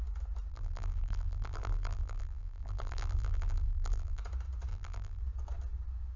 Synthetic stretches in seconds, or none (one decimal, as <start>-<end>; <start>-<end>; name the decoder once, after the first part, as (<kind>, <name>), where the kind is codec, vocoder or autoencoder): 0.5-4.2 (vocoder, BigVGAN v2); 4.7-5.2